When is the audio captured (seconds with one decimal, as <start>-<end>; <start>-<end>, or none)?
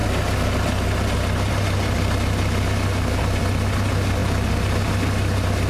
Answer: 0.0-5.7